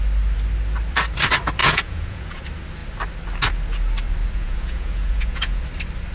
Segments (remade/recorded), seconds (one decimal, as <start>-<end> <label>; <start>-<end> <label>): 0.0-1.6 recorded; 1.6-2.4 remade; 2.4-4.2 recorded; 4.2-5.6 remade; 5.6-6.1 recorded